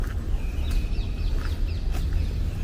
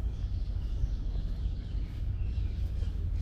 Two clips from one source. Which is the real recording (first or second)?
first